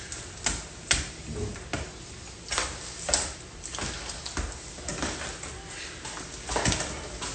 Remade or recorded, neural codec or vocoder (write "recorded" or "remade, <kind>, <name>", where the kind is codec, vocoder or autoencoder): recorded